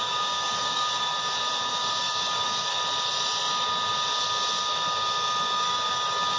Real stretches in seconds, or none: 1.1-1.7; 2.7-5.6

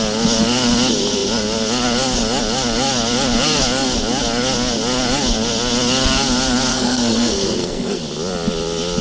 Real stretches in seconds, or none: 0.0-6.7; 8.0-9.0

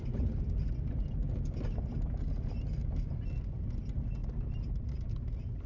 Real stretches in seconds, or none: 0.0-5.7

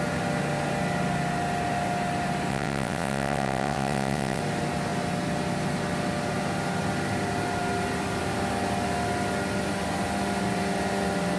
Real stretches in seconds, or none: 0.0-2.5; 4.4-11.4

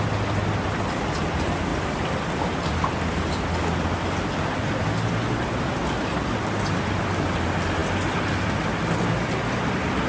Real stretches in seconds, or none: 0.0-10.1